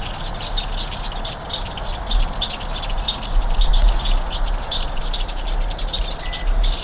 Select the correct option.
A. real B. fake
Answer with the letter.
A